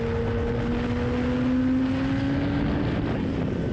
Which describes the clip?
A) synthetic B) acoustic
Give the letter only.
B